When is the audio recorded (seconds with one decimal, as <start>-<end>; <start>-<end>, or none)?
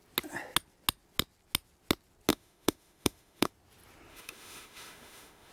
0.0-2.3; 3.5-4.1